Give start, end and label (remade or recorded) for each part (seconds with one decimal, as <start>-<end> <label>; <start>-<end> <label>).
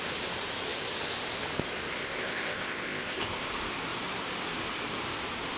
0.0-2.0 recorded; 2.0-3.5 remade; 3.5-5.6 recorded